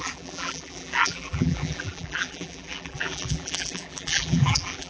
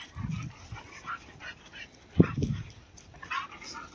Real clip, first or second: second